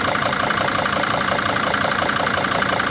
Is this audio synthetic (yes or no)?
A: yes